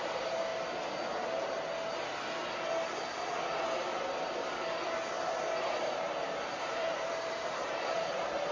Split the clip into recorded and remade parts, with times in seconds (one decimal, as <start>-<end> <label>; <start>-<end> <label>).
0.0-0.5 remade; 0.5-5.6 recorded; 5.6-8.5 remade